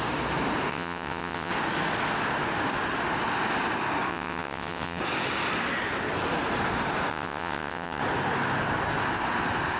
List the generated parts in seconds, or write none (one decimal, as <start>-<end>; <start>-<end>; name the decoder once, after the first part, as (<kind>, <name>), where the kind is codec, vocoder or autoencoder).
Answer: 0.7-1.5 (vocoder, WaveNeXt); 4.1-5.0; 7.1-8.0